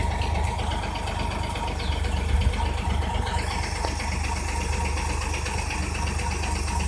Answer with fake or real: real